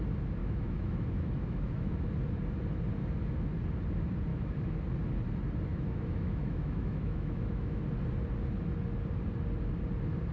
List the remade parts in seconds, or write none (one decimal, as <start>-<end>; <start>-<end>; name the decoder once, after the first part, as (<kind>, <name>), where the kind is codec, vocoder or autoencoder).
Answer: 0.4-2.1 (autoencoder, DAC-VAE); 4.3-4.8; 5.7-7.8